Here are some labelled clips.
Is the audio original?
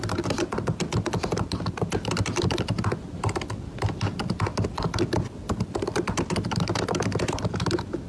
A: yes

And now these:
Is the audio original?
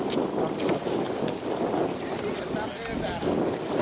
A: yes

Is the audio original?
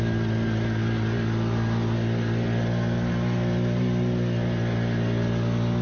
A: yes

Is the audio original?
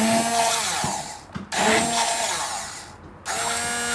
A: yes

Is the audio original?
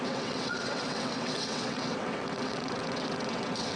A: no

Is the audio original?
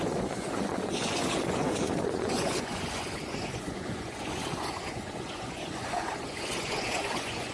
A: no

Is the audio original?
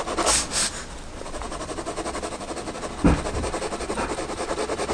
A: yes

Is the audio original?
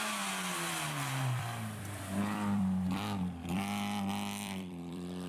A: no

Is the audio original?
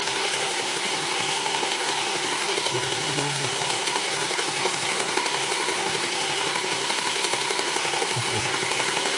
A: no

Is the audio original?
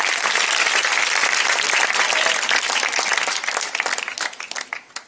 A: yes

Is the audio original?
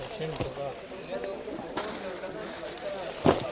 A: yes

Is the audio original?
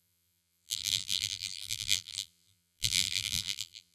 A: no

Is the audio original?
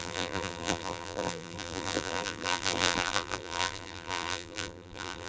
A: no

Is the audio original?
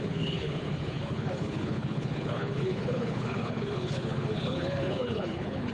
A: no